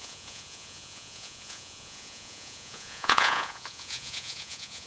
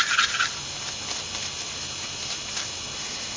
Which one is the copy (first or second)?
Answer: first